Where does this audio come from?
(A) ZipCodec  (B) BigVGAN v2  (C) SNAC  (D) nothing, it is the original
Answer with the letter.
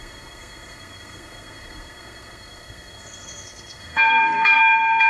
C